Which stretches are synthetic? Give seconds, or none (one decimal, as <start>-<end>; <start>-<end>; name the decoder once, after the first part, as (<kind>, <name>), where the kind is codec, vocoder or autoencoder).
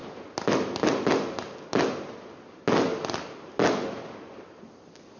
none